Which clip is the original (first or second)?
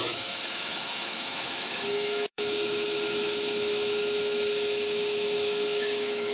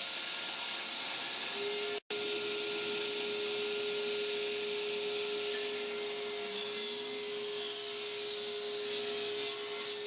second